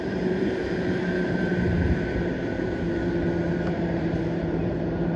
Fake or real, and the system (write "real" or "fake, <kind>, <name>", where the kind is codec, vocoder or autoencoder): fake, vocoder, BigVGAN v2